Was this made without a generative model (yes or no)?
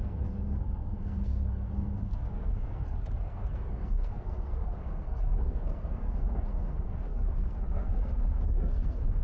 no